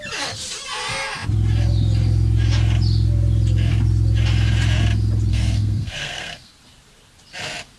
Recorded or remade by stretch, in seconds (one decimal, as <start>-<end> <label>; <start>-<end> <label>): 0.0-5.3 recorded; 5.3-6.5 remade; 6.5-7.8 recorded